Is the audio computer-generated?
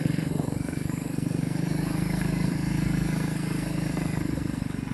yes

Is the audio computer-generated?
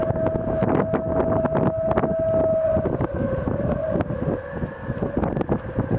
no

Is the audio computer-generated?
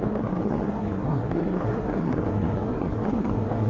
yes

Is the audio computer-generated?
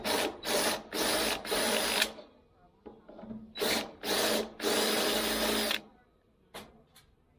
no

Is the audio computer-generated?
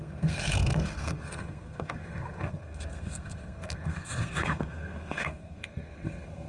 yes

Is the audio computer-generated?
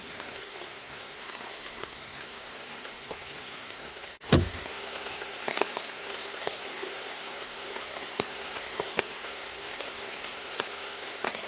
yes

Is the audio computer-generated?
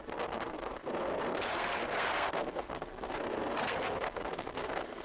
yes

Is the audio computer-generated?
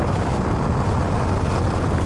no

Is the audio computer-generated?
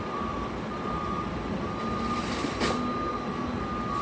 no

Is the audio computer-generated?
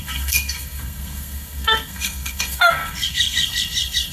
yes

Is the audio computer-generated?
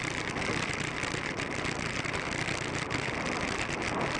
no